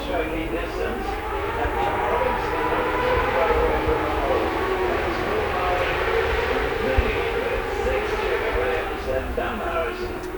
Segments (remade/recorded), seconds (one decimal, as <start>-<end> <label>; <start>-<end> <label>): 0.0-0.4 remade; 0.4-1.2 recorded; 1.2-2.1 remade; 2.1-2.9 recorded; 2.9-5.3 remade; 5.3-8.8 recorded; 8.8-9.8 remade; 9.8-10.4 recorded